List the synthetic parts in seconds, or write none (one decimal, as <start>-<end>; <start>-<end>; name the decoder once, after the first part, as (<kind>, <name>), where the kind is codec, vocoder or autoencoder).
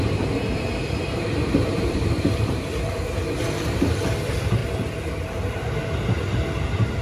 0.5-4.0 (vocoder, BigVGAN v2); 4.6-5.3